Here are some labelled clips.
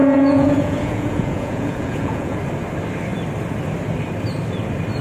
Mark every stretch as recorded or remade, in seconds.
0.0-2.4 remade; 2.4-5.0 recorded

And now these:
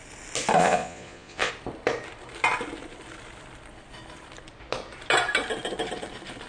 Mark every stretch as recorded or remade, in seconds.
0.0-0.6 recorded; 0.6-1.5 remade; 1.5-6.5 recorded

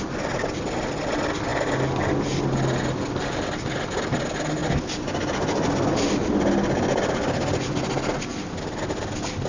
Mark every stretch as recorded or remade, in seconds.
0.0-9.5 recorded

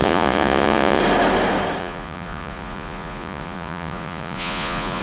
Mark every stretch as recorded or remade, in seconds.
0.0-1.0 remade; 1.0-1.8 recorded; 1.8-5.0 remade

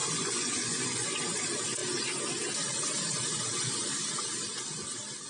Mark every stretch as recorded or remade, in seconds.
0.0-1.2 remade; 1.2-5.3 recorded

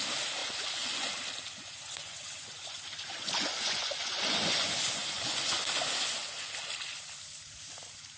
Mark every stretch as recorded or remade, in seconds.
0.0-0.4 recorded; 0.4-1.1 remade; 1.1-1.6 recorded; 1.6-6.5 remade; 6.5-8.2 recorded